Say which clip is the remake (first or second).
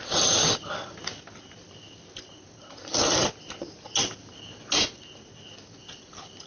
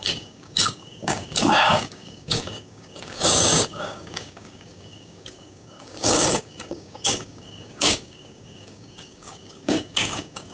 second